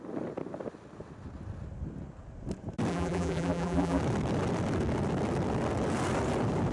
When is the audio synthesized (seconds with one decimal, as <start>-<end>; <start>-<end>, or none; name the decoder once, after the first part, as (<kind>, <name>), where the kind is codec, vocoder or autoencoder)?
2.9-4.0 (vocoder, BigVGAN v2)